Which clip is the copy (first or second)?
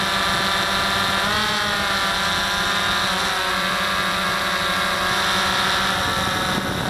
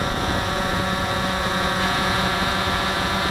second